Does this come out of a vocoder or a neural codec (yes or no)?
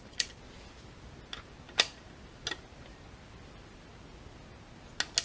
no